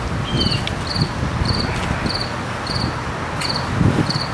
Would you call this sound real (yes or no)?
yes